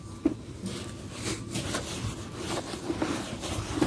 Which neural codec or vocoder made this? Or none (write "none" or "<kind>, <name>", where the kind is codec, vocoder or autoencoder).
none